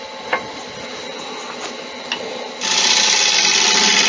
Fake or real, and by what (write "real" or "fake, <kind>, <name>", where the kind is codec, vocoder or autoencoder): real